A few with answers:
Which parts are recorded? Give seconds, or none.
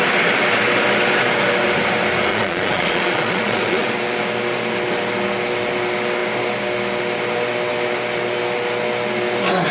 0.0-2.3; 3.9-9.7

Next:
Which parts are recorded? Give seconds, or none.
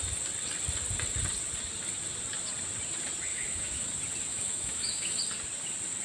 0.0-3.3; 3.9-4.3; 5.2-6.0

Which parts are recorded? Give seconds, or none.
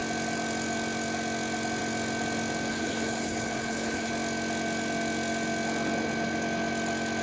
0.0-2.7; 4.1-7.2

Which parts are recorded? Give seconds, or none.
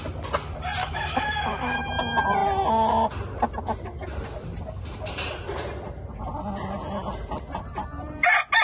0.0-0.8; 1.9-8.6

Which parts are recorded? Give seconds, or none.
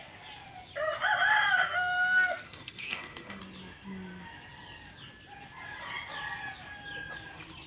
0.0-1.6; 3.4-7.7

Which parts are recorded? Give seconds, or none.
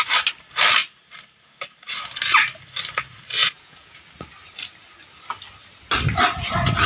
0.0-3.4; 4.0-6.9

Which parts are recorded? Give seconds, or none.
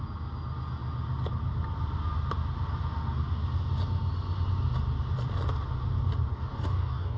0.0-6.3